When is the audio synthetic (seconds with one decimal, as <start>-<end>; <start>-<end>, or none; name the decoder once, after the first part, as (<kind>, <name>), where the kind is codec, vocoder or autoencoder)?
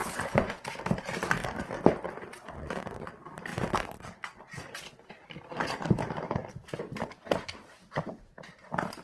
0.0-0.8 (vocoder, Vocos)